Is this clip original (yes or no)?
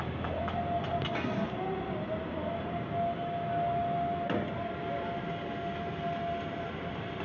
yes